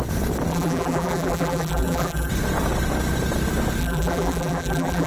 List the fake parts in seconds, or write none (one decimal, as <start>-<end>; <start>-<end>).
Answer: 0.5-2.3; 3.8-5.1